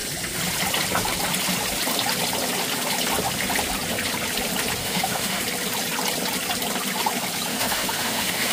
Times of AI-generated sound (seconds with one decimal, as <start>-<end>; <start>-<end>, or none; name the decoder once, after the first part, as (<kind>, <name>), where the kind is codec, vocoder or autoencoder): 4.8-5.4 (autoencoder, DAC-VAE); 7.5-8.5